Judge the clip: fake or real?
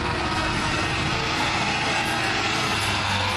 fake